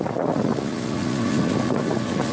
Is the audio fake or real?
fake